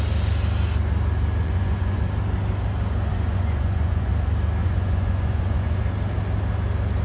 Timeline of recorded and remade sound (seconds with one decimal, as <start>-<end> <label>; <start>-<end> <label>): 0.0-1.4 recorded; 1.4-2.0 remade; 2.0-3.1 recorded; 3.1-4.1 remade; 4.1-4.6 recorded; 4.6-5.8 remade; 5.8-7.0 recorded